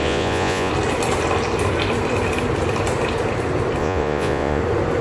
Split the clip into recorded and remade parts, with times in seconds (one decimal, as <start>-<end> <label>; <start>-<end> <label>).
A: 0.0-0.7 remade; 0.7-3.8 recorded; 3.8-4.6 remade; 4.6-5.0 recorded